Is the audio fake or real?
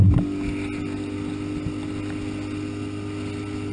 real